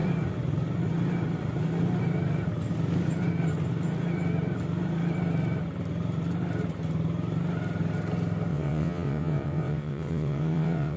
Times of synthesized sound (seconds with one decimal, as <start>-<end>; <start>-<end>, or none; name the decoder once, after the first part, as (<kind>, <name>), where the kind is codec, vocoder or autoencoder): 8.5-11.0 (vocoder, WaveNeXt)